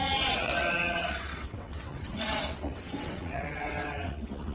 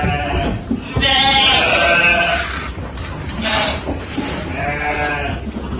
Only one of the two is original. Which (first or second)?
second